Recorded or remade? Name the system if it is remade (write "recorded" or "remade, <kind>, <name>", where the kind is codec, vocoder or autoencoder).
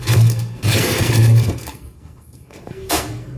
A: remade, codec, SNAC